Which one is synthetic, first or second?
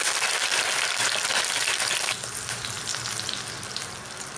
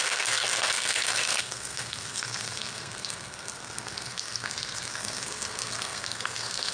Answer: second